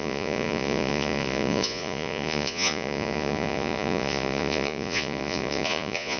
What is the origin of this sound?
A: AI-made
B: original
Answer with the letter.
A